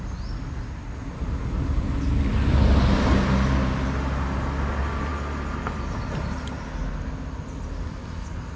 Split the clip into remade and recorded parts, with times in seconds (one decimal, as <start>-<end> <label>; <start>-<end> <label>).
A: 0.0-8.6 recorded